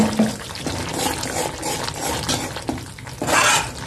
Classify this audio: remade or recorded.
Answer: recorded